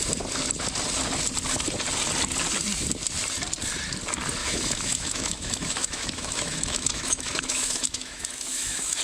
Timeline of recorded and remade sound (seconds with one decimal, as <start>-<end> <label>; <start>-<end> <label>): 0.0-4.4 recorded; 4.4-9.0 remade